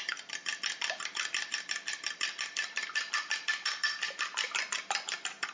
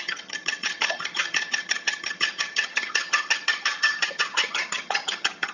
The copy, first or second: second